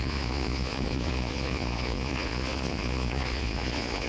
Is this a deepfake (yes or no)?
yes